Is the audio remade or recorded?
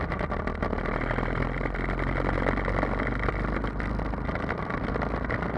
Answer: recorded